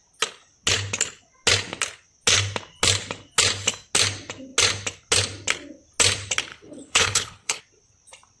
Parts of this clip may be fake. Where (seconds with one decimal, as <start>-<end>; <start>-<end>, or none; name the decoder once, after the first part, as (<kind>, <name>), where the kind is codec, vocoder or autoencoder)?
6.5-7.6 (codec, HILCodec)